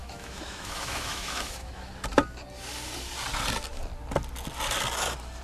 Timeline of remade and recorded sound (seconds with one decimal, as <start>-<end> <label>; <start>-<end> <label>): 0.0-1.9 remade; 1.9-5.4 recorded